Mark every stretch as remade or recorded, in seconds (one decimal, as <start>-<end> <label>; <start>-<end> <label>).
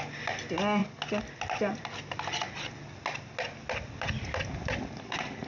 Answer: 0.0-5.5 recorded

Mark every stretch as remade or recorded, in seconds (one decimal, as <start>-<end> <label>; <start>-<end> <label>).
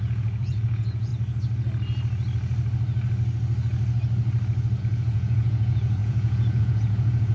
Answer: 0.0-1.1 remade; 1.1-4.8 recorded; 4.8-7.3 remade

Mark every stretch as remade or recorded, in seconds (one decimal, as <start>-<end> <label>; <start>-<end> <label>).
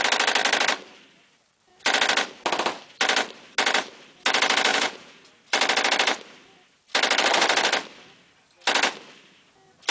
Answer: 0.0-4.7 recorded; 4.7-5.3 remade; 5.3-9.9 recorded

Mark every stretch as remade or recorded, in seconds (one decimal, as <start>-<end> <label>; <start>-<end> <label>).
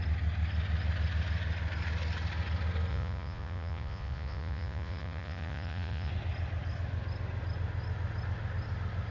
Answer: 0.0-2.9 recorded; 2.9-6.1 remade; 6.1-9.1 recorded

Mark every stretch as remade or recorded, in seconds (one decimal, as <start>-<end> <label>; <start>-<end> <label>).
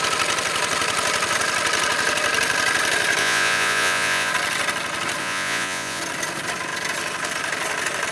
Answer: 0.0-3.2 recorded; 3.2-4.3 remade; 4.3-5.2 recorded; 5.2-6.0 remade; 6.0-8.1 recorded